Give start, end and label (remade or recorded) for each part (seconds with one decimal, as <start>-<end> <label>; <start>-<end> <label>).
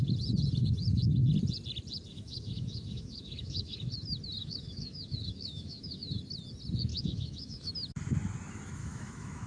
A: 0.0-2.1 recorded; 2.1-3.9 remade; 3.9-4.4 recorded; 4.4-6.2 remade; 6.2-6.9 recorded; 6.9-7.7 remade; 7.7-8.8 recorded; 8.8-9.5 remade